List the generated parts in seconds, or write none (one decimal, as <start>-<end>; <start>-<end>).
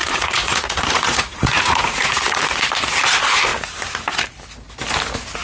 0.0-2.4